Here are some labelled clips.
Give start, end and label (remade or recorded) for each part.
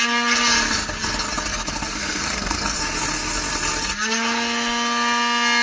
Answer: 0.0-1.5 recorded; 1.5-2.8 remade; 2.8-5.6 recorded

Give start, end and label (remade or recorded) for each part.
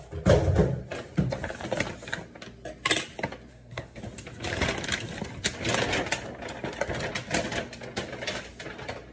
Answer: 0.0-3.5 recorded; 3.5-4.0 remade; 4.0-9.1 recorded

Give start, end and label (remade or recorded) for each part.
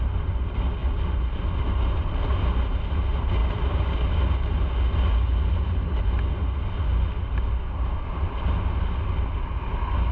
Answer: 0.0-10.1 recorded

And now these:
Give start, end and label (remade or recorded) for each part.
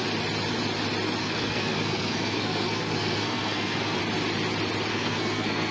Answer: 0.0-1.2 recorded; 1.2-4.0 remade; 4.0-4.9 recorded; 4.9-5.7 remade